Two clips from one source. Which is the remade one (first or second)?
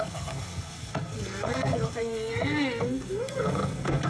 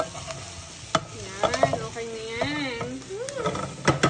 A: first